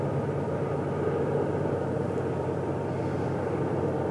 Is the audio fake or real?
real